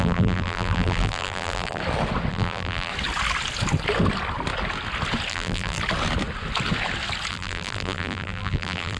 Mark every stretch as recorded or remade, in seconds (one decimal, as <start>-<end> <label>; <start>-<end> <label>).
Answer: 0.0-1.8 remade; 1.8-2.3 recorded; 2.3-2.9 remade; 2.9-5.3 recorded; 5.3-5.8 remade; 5.8-7.3 recorded; 7.3-9.0 remade